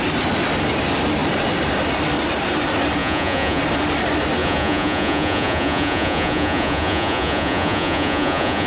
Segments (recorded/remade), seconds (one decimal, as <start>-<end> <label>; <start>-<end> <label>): 0.0-3.0 recorded; 3.0-3.6 remade; 3.6-4.4 recorded; 4.4-8.7 remade